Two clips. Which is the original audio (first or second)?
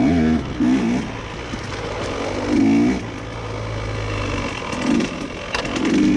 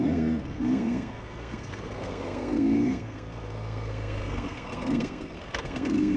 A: first